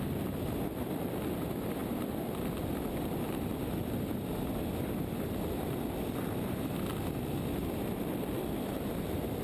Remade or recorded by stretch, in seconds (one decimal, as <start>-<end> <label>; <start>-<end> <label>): 0.0-9.4 recorded